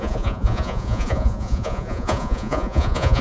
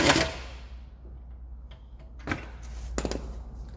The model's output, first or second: first